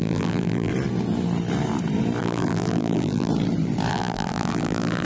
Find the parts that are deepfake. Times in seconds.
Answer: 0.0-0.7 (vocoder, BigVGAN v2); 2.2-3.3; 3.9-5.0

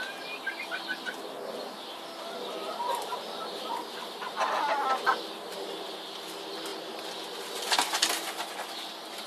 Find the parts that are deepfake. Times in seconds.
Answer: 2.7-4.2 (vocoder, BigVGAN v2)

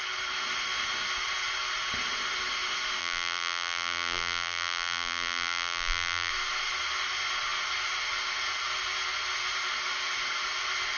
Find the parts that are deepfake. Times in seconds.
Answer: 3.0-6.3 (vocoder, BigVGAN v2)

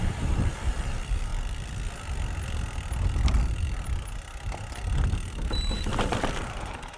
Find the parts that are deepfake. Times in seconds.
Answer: 0.0-1.3 (vocoder, BigVGAN v2); 5.3-7.0

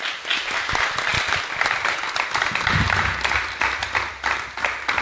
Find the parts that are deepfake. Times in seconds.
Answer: none

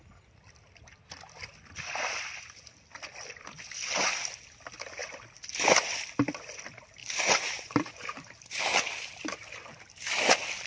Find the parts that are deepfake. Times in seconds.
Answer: 7.0-8.9 (vocoder, BigVGAN v2)